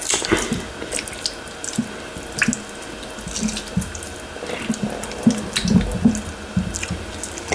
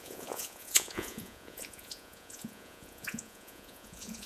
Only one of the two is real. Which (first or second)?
first